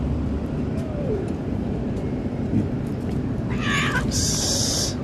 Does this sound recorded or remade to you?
recorded